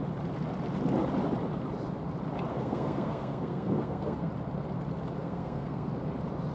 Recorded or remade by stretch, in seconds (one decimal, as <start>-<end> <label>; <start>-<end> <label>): 0.0-2.5 recorded; 2.5-4.3 remade; 4.3-5.2 recorded; 5.2-5.9 remade; 5.9-6.5 recorded